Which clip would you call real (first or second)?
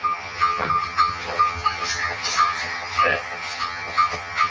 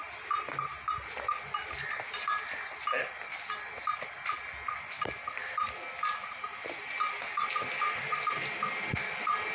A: second